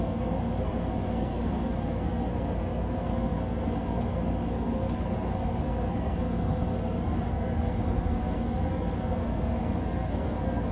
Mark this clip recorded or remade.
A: remade